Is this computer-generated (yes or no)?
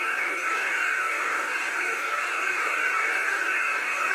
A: yes